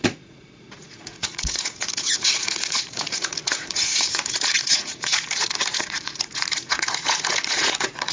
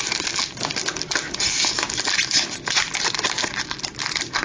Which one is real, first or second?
second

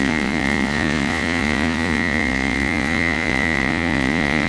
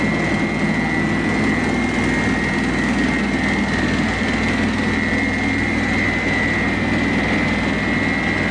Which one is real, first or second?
second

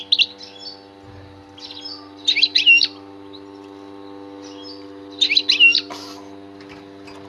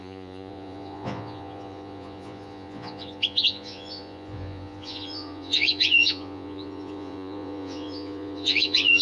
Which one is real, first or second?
first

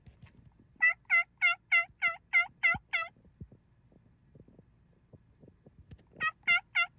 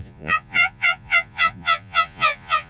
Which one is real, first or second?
first